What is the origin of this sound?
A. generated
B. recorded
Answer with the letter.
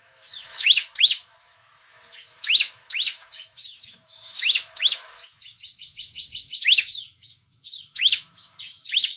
A